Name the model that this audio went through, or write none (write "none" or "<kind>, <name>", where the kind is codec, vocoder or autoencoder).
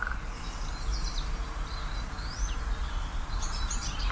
none